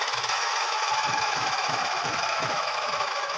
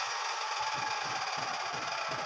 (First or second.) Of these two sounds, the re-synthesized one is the first